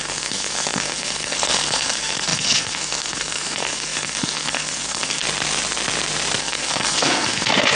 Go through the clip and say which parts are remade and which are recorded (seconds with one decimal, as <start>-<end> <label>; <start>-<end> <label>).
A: 0.0-5.2 remade; 5.2-6.4 recorded; 6.4-7.8 remade